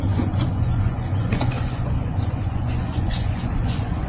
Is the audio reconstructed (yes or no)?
yes